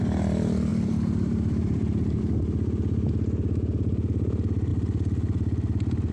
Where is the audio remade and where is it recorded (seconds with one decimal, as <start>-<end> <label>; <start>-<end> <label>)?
0.0-0.7 recorded; 0.7-2.2 remade; 2.2-6.1 recorded